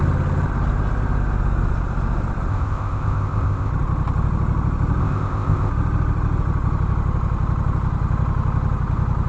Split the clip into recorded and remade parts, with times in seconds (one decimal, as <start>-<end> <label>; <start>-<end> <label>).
0.0-2.5 recorded; 2.5-3.7 remade; 3.7-5.0 recorded; 5.0-5.7 remade; 5.7-9.3 recorded